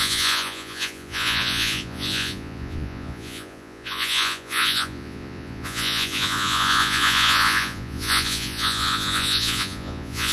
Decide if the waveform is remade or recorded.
remade